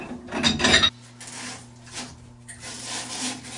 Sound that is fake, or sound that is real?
real